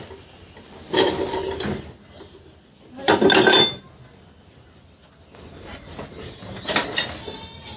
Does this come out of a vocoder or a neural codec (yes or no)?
no